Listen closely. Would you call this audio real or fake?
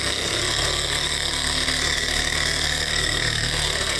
fake